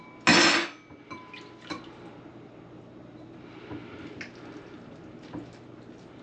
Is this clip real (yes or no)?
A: yes